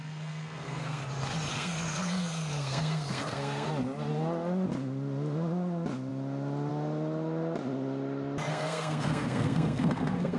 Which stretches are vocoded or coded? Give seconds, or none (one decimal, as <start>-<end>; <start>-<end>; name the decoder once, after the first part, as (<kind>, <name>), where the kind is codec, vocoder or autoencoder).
0.0-1.0 (codec, SNAC); 1.5-3.7; 8.5-10.4